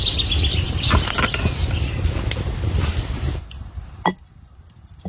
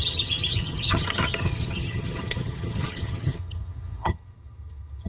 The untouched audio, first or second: first